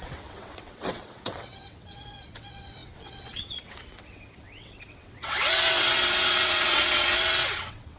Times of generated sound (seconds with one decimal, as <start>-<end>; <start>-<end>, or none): 0.0-8.0